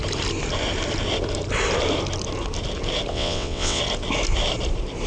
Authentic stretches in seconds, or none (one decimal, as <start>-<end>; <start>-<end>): 0.0-3.1; 3.8-5.1